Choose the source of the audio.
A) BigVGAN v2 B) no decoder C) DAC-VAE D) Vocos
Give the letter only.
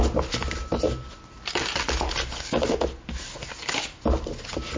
B